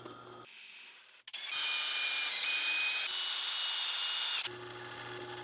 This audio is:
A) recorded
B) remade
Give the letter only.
A